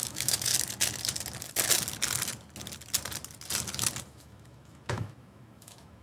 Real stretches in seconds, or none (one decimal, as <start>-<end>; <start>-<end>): 0.5-4.1